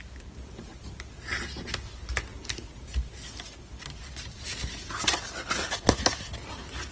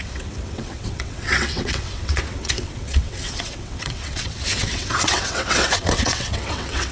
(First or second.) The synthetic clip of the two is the second